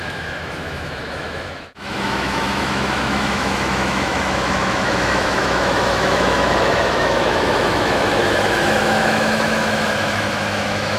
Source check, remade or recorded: remade